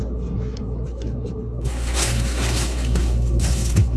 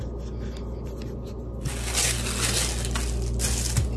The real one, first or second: second